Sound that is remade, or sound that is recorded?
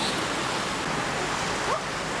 recorded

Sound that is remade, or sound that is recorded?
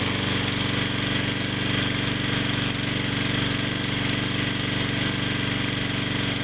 recorded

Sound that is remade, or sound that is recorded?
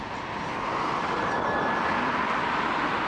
recorded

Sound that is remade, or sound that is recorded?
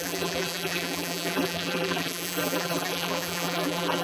remade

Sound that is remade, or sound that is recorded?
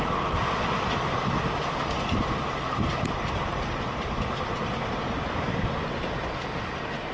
recorded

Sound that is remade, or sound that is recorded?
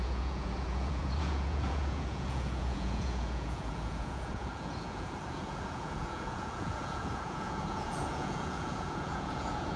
remade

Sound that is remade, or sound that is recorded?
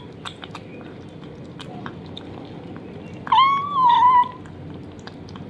recorded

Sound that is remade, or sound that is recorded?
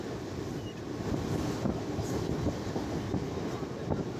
recorded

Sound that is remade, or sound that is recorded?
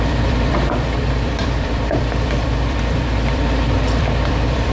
remade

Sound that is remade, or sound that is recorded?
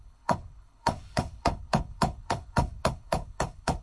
remade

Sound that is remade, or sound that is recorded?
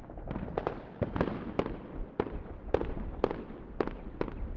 recorded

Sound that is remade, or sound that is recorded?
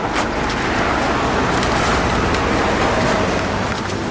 recorded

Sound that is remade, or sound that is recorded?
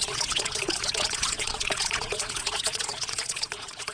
remade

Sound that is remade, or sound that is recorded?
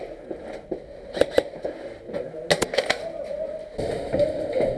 recorded